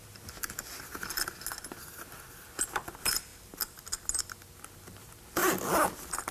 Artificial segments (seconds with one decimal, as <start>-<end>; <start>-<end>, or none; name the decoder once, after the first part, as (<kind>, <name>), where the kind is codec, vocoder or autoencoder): none